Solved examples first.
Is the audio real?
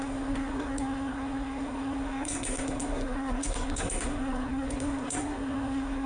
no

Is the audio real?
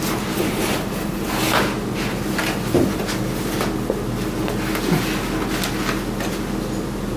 yes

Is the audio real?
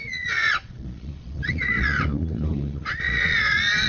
no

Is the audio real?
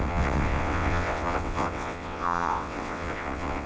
no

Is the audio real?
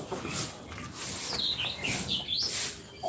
yes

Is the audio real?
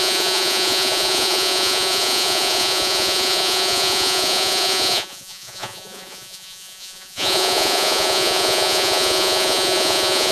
no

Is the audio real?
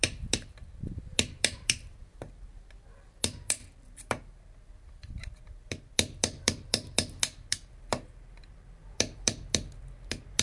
no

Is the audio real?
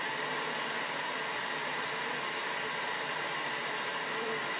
yes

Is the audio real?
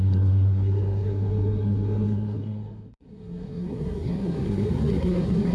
no